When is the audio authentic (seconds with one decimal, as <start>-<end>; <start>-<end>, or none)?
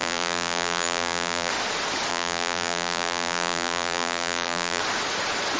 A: 1.5-2.1; 4.8-5.6